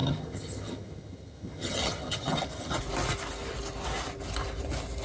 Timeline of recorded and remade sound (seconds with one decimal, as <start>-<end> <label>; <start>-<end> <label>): 0.0-2.8 remade; 2.8-5.0 recorded